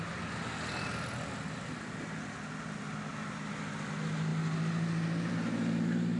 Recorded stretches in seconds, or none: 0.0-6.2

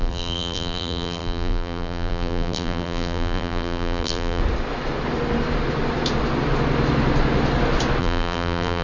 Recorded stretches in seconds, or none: 4.4-8.0

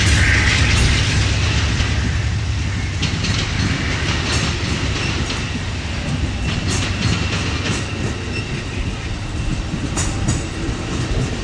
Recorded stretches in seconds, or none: 0.0-11.4

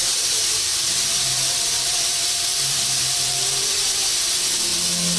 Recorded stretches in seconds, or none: 0.0-0.7; 3.8-5.2

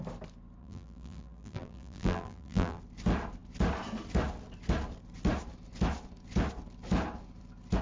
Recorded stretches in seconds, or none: 0.0-0.6; 2.8-7.8

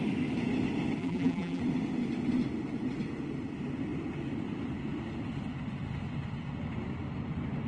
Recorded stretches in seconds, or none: 0.0-1.0; 1.6-7.7